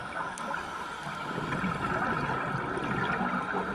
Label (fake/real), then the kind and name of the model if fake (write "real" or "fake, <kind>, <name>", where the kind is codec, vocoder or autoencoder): real